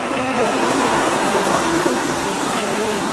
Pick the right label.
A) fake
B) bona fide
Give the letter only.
A